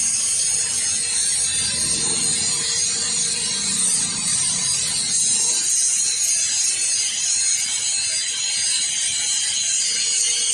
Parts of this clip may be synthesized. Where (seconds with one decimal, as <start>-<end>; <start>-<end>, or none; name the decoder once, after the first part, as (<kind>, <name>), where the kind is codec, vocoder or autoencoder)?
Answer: 4.0-4.8 (vocoder, BigVGAN v2)